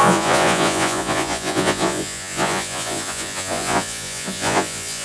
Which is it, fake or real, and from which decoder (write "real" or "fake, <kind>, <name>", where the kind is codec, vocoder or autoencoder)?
fake, vocoder, Vocos